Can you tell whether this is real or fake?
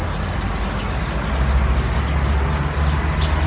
real